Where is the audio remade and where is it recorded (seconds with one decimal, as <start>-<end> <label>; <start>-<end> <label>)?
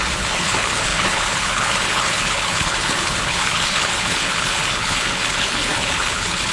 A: 0.0-6.5 remade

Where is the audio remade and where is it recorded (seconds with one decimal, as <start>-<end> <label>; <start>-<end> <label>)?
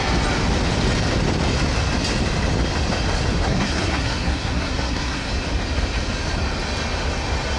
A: 0.0-3.4 recorded; 3.4-5.3 remade; 5.3-7.6 recorded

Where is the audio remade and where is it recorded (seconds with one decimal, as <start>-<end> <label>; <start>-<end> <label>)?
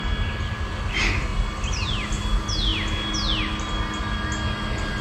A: 0.0-1.3 recorded; 1.3-2.2 remade; 2.2-5.0 recorded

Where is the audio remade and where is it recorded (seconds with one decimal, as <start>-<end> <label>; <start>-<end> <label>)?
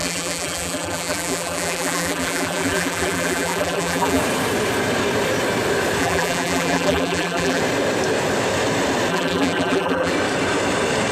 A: 0.0-4.2 remade; 4.2-6.0 recorded; 6.0-7.6 remade; 7.6-9.1 recorded; 9.1-10.1 remade; 10.1-11.1 recorded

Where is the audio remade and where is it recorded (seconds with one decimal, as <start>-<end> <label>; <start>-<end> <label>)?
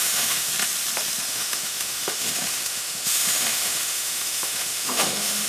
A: 0.0-0.5 remade; 0.5-1.3 recorded; 1.3-5.5 remade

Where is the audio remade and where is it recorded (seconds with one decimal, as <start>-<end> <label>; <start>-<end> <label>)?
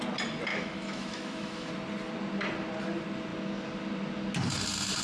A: 0.0-0.5 recorded; 0.5-1.7 remade; 1.7-5.0 recorded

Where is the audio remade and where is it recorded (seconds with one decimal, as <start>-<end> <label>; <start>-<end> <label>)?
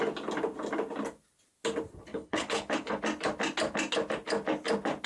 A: 0.0-2.1 recorded; 2.1-3.0 remade; 3.0-5.1 recorded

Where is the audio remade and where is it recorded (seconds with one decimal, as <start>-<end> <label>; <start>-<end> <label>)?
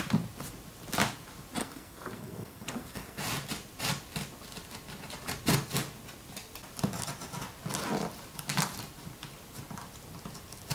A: 0.0-1.6 recorded; 1.6-3.2 remade; 3.2-10.7 recorded